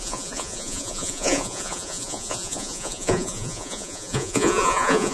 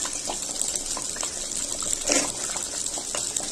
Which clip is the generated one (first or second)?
first